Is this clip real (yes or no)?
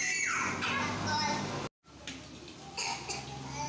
yes